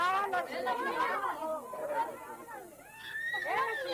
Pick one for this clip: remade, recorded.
recorded